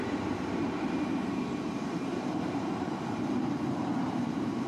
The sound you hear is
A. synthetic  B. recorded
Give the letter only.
A